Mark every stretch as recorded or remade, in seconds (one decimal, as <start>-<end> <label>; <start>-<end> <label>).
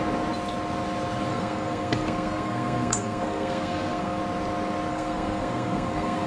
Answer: 0.0-1.3 recorded; 1.3-4.2 remade; 4.2-4.9 recorded; 4.9-6.3 remade